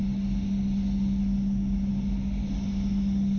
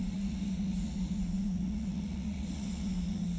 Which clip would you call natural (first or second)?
first